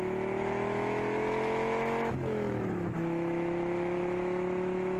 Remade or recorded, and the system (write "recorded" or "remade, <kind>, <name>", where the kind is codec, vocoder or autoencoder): remade, autoencoder, DAC-VAE